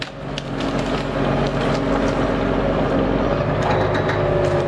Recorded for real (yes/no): yes